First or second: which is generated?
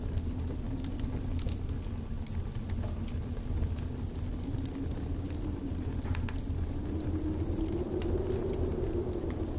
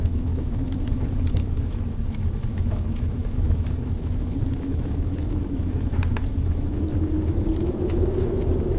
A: second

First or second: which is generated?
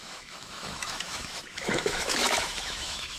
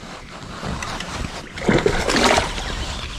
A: first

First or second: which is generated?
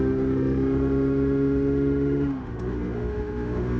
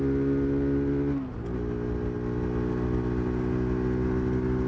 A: first